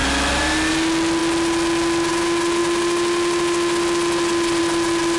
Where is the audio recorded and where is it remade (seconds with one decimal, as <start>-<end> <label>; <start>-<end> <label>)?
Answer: 0.0-5.2 recorded